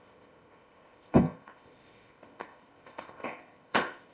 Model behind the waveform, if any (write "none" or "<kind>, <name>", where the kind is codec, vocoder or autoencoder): codec, ZipCodec